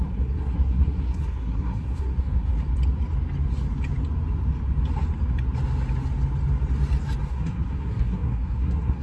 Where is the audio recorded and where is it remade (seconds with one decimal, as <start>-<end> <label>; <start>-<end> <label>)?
0.0-2.5 remade; 2.5-7.3 recorded; 7.3-9.0 remade